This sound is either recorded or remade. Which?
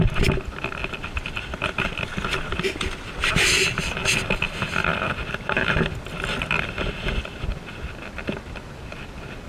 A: recorded